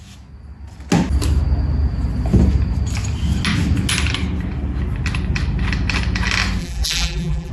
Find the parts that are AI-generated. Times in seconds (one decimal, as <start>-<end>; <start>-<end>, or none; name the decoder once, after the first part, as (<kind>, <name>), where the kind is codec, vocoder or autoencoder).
6.6-7.5 (vocoder, BigVGAN v2)